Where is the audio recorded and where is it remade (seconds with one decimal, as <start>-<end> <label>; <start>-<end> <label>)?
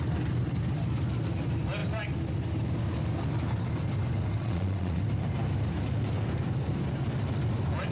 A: 0.0-4.4 recorded; 4.4-5.0 remade; 5.0-7.9 recorded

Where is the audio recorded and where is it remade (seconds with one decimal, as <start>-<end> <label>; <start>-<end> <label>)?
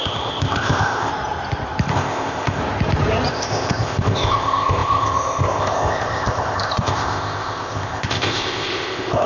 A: 0.0-1.1 remade; 1.1-1.9 recorded; 1.9-2.6 remade; 2.6-3.3 recorded; 3.3-9.3 remade